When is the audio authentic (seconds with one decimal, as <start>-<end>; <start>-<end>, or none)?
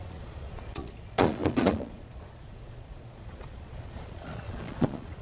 none